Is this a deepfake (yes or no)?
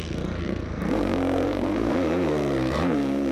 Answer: yes